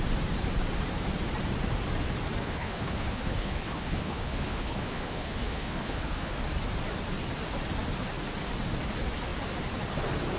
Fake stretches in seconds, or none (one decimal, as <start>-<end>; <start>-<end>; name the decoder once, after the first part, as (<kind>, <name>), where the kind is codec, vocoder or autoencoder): 2.4-6.3 (codec, HILCodec)